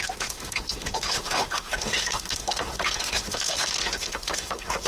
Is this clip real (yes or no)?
no